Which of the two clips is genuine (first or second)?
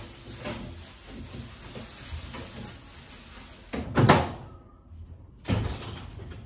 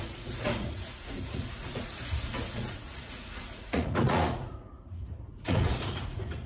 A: first